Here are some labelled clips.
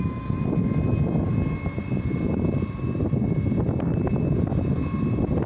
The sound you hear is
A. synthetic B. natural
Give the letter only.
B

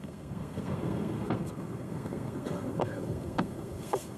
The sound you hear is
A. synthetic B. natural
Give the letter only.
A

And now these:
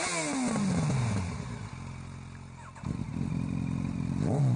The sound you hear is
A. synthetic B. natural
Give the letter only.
B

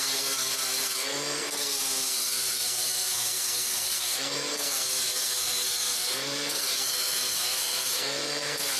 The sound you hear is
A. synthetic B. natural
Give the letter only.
A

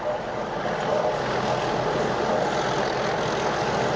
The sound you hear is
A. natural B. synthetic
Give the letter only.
A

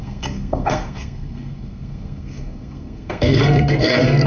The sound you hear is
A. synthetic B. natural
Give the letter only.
A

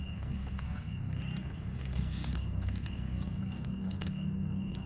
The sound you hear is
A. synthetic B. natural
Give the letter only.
A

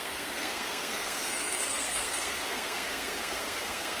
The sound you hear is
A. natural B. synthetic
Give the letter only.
B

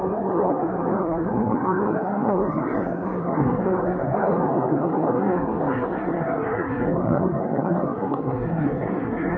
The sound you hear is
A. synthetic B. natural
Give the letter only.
A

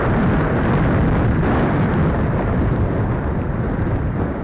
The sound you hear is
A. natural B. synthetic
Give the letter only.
A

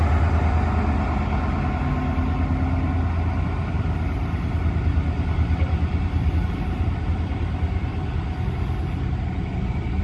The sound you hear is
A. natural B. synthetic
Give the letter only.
A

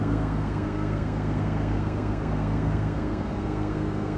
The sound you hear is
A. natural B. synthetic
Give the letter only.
B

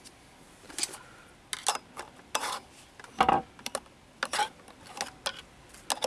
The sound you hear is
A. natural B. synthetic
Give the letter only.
A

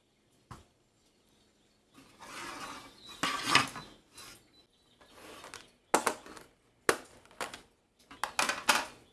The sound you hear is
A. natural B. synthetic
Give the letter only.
A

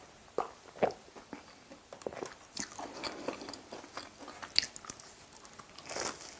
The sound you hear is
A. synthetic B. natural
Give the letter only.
B